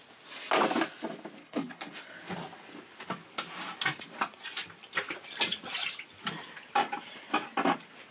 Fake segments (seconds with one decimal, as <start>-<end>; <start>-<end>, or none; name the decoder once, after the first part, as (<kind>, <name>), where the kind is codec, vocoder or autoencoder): 1.4-2.1 (codec, HILCodec)